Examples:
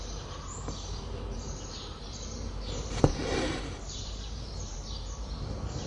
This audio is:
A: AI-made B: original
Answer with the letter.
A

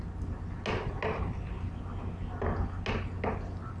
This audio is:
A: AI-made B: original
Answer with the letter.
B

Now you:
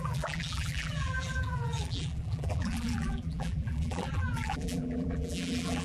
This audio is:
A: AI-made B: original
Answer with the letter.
A